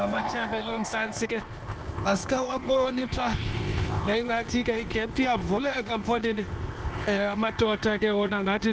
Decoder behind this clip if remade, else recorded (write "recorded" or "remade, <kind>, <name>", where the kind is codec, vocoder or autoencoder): remade, codec, ZipCodec